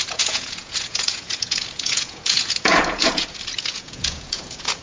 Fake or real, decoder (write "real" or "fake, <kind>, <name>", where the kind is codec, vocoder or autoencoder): fake, vocoder, Vocos